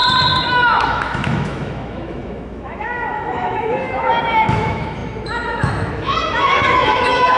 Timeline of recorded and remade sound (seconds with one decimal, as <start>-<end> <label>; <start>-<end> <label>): 0.0-0.5 recorded; 0.5-7.4 remade